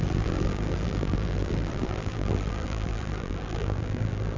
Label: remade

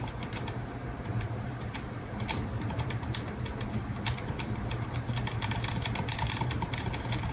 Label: remade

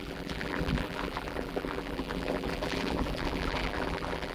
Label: remade